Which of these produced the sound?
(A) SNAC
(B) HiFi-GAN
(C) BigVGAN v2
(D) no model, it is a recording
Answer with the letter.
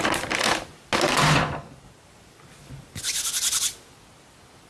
D